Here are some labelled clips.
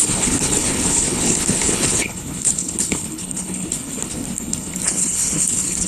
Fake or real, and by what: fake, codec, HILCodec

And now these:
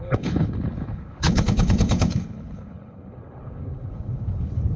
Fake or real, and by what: fake, codec, HILCodec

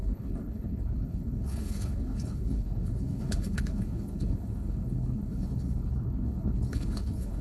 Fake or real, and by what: fake, codec, HILCodec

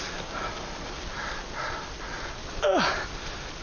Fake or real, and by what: real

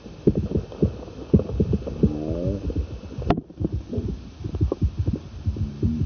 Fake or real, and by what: real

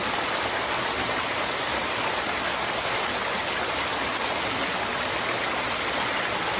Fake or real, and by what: real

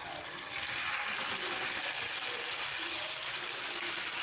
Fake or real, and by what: real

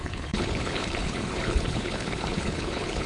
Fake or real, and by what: fake, codec, HILCodec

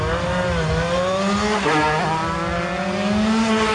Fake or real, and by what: real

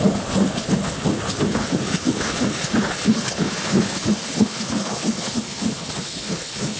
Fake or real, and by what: fake, codec, HILCodec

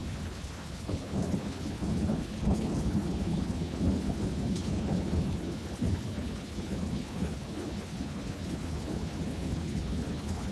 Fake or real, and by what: fake, codec, HILCodec